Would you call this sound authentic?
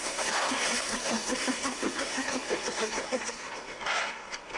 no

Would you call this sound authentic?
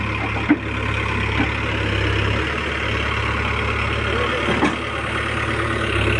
yes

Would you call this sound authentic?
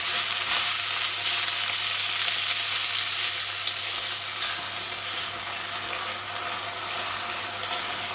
yes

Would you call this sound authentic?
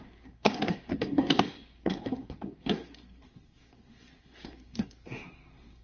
no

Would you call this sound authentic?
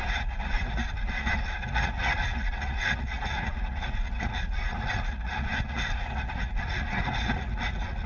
no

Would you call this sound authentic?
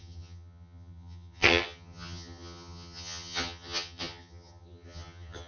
no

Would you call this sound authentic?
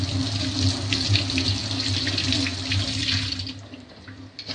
yes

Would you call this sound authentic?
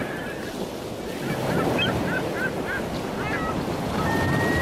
yes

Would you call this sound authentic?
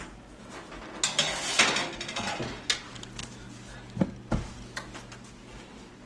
yes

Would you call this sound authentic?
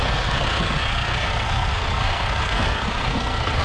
no